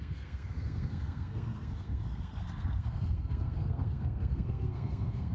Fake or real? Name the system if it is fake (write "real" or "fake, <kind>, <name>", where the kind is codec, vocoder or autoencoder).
fake, codec, SNAC